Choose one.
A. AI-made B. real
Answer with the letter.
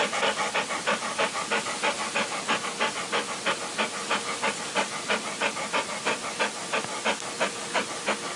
B